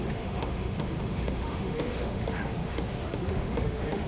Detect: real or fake fake